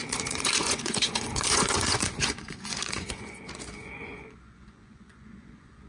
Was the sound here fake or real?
fake